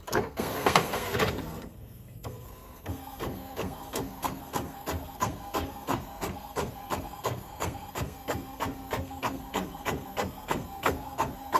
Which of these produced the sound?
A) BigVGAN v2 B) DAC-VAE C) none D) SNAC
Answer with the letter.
D